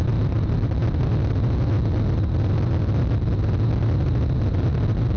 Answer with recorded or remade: recorded